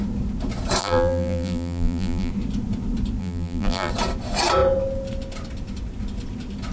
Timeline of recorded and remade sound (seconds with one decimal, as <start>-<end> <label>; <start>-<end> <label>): 0.0-0.8 recorded; 0.8-2.3 remade; 2.3-3.2 recorded; 3.2-3.9 remade; 3.9-6.7 recorded